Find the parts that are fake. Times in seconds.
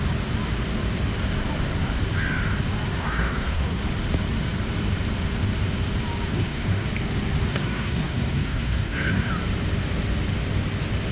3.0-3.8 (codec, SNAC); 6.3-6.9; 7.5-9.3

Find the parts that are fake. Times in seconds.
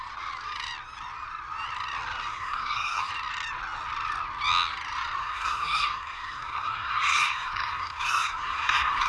2.3-3.1 (codec, SNAC); 5.2-9.1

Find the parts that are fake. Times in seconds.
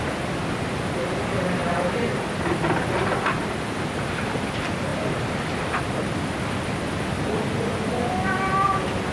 none